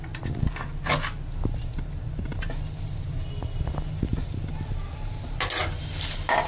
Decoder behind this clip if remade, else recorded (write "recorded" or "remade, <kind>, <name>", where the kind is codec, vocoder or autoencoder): recorded